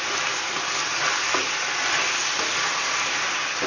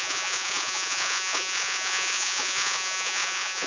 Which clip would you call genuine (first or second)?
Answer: first